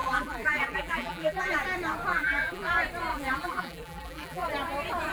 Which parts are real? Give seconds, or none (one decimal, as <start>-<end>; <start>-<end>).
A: 1.5-2.1; 2.7-3.1; 4.5-5.1